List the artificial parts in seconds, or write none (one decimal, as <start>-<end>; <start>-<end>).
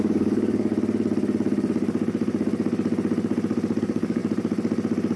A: 0.0-0.7; 3.8-4.2